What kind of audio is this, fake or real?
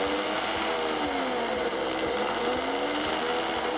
real